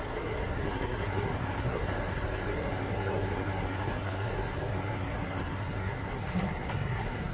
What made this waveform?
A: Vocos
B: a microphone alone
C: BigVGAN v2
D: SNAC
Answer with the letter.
D